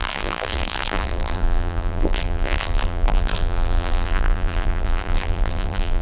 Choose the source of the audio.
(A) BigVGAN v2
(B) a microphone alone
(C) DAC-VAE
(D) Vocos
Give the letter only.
A